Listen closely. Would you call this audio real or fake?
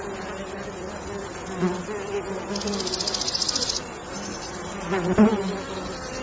real